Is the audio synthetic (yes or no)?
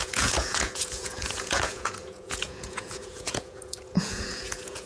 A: yes